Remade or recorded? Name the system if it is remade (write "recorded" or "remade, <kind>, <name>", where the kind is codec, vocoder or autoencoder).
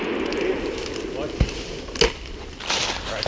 recorded